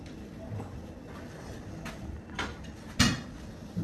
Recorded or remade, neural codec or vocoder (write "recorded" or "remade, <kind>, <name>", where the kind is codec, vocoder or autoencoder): recorded